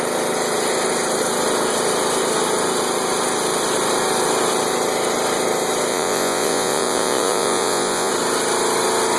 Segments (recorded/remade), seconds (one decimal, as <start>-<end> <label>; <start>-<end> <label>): 0.0-5.9 recorded; 5.9-8.1 remade; 8.1-9.2 recorded